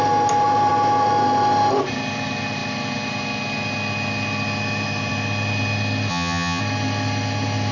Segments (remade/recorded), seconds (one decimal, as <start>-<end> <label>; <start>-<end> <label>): 0.0-6.1 recorded; 6.1-6.6 remade; 6.6-7.7 recorded